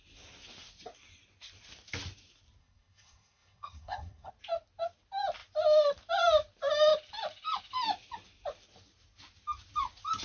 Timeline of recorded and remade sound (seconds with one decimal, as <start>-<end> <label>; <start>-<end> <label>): 0.0-2.6 recorded; 2.6-4.3 remade; 4.3-10.2 recorded